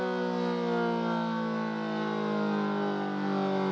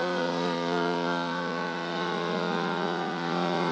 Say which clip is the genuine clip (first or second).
first